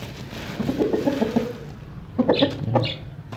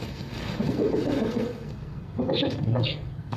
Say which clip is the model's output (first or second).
second